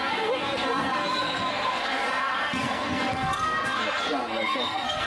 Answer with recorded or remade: remade